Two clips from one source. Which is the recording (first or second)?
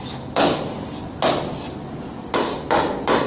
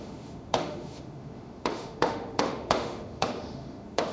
first